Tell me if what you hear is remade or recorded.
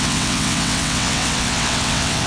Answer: remade